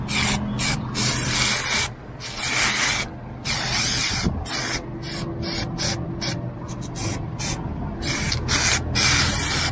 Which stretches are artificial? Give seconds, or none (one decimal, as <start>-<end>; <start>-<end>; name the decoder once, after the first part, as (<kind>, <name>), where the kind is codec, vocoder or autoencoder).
3.4-4.5 (vocoder, BigVGAN v2)